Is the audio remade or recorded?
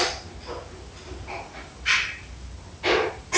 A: recorded